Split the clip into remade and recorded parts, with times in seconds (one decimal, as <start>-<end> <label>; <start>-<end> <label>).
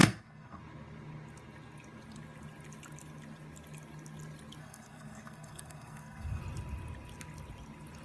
0.0-0.6 remade; 0.6-4.6 recorded; 4.6-6.4 remade; 6.4-8.0 recorded